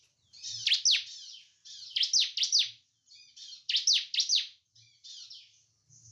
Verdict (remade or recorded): recorded